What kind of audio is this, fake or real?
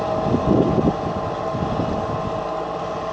real